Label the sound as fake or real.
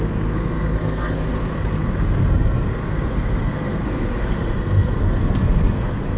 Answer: fake